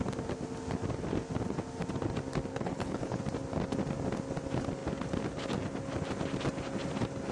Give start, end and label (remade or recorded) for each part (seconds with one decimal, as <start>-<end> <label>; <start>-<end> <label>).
0.0-2.5 recorded; 2.5-3.2 remade; 3.2-7.3 recorded

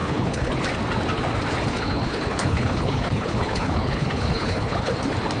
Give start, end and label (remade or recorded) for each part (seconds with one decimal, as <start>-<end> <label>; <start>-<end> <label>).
0.0-0.5 remade; 0.5-1.7 recorded; 1.7-4.9 remade; 4.9-5.4 recorded

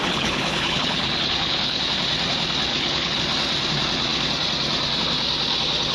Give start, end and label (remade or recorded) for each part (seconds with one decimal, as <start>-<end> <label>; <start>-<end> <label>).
0.0-1.8 remade; 1.8-2.7 recorded; 2.7-3.2 remade; 3.2-5.9 recorded

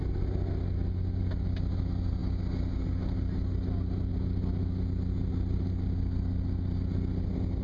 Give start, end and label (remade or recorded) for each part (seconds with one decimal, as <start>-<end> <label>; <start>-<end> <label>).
0.0-7.6 recorded

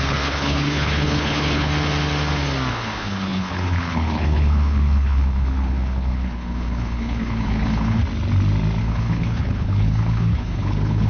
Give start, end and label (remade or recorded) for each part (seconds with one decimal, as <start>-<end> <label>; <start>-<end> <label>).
0.0-1.7 remade; 1.7-2.7 recorded; 2.7-8.0 remade; 8.0-8.8 recorded; 8.8-11.1 remade

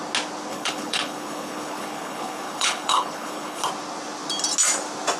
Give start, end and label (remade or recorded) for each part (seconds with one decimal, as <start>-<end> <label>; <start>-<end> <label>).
0.0-0.5 recorded; 0.5-3.6 remade; 3.6-5.2 recorded

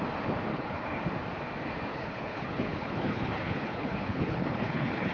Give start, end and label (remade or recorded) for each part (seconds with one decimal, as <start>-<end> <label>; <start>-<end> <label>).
0.0-0.5 recorded; 0.5-1.0 remade; 1.0-1.9 recorded; 1.9-5.1 remade